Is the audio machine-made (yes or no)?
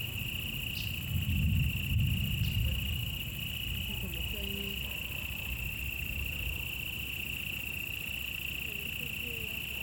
no